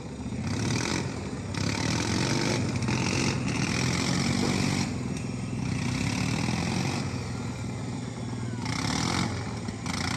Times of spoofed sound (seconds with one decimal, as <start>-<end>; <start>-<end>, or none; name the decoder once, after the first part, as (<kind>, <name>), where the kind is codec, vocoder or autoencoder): none